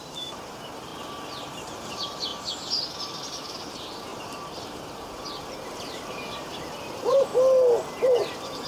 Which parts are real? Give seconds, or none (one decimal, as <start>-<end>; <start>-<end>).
0.9-1.9; 2.3-3.0; 7.3-8.0

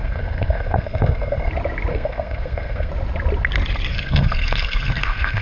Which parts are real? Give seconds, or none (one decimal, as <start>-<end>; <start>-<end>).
1.5-1.9; 2.9-3.9